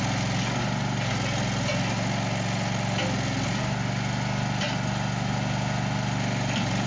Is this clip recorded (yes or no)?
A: yes